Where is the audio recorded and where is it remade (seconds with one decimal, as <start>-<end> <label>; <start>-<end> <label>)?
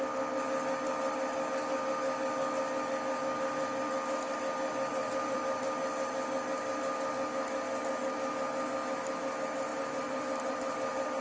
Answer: 0.0-4.9 recorded; 4.9-5.4 remade; 5.4-9.7 recorded; 9.7-11.2 remade